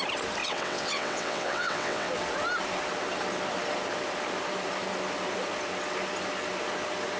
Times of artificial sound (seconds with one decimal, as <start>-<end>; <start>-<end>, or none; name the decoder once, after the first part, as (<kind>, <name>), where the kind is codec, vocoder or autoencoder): 0.4-2.1 (vocoder, WaveNeXt)